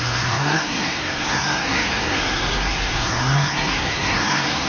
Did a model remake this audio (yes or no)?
yes